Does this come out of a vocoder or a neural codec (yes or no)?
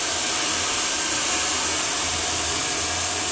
no